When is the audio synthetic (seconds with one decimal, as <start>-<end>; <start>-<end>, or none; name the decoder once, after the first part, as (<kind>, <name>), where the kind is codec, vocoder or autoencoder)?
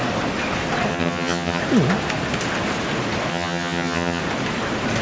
0.9-1.6 (vocoder, HiFi-GAN); 3.3-4.2